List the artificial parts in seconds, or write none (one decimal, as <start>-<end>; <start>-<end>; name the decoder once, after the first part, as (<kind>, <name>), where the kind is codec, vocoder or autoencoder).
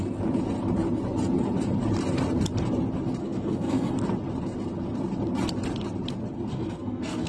3.2-3.9 (codec, SNAC); 6.5-7.3